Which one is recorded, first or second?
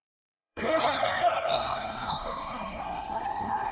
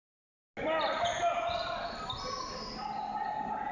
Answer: second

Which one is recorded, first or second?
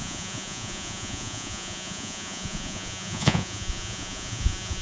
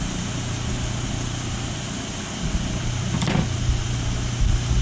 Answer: second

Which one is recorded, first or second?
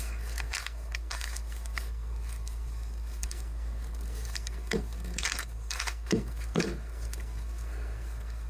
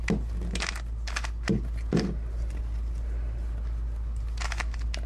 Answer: second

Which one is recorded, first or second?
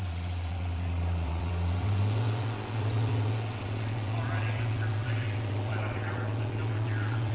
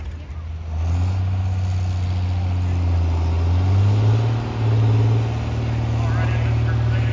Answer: second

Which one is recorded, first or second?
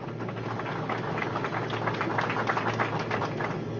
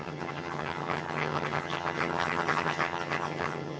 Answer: first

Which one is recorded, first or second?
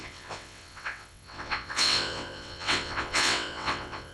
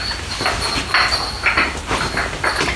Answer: second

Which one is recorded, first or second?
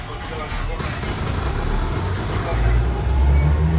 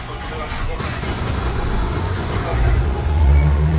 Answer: first